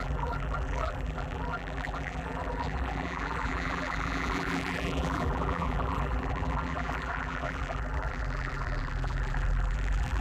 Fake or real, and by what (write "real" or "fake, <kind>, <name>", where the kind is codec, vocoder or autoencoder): fake, vocoder, BigVGAN v2